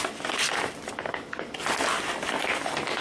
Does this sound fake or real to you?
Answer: real